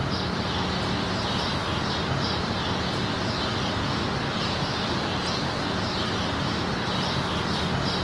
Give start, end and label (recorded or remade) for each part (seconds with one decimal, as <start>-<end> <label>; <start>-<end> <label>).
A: 0.0-8.0 recorded